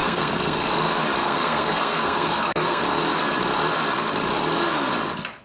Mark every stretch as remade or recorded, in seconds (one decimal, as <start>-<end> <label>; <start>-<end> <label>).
0.0-0.7 remade; 0.7-1.2 recorded; 1.2-2.8 remade; 2.8-5.4 recorded

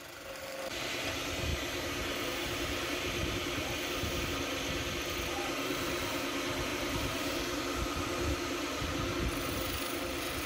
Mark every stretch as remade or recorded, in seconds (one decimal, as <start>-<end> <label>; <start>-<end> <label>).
0.0-1.5 recorded; 1.5-4.2 remade; 4.2-6.7 recorded; 6.7-7.6 remade; 7.6-10.5 recorded

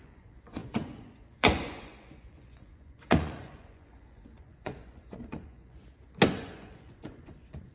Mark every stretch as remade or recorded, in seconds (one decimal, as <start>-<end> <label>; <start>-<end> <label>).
0.0-5.8 remade; 5.8-6.3 recorded; 6.3-7.7 remade

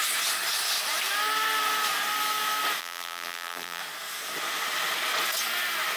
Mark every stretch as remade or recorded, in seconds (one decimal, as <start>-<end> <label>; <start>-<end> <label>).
0.0-2.8 recorded; 2.8-3.8 remade; 3.8-6.0 recorded